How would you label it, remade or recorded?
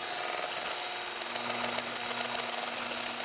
recorded